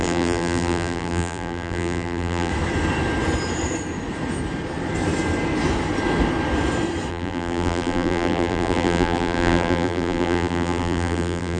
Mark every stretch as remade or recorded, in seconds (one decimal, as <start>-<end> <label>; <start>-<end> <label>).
0.0-2.5 remade; 2.5-7.1 recorded; 7.1-11.6 remade